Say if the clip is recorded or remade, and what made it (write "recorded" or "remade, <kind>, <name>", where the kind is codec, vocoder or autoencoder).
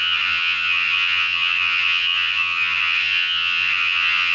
remade, vocoder, HiFi-GAN